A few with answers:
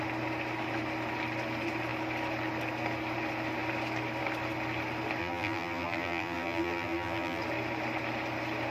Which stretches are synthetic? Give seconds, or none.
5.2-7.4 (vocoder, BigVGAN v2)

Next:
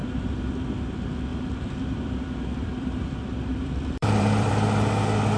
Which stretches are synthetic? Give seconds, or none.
1.3-4.5 (vocoder, BigVGAN v2)

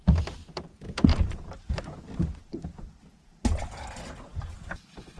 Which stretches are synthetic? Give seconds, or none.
0.4-1.8 (vocoder, BigVGAN v2)

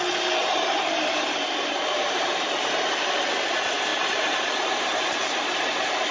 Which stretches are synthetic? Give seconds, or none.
0.4-2.9 (vocoder, BigVGAN v2)

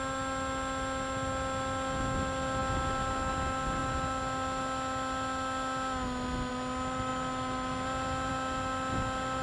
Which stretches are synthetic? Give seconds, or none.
none

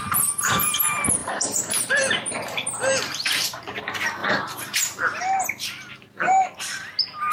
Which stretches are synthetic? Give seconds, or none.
1.2-3.8 (vocoder, BigVGAN v2); 4.2-4.8

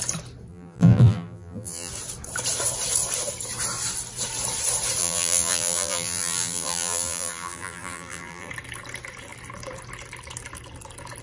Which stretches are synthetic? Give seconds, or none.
0.5-1.9 (vocoder, BigVGAN v2); 5.0-8.5

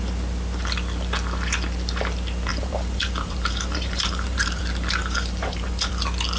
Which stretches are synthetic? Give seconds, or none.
2.5-4.6 (vocoder, BigVGAN v2); 5.0-5.9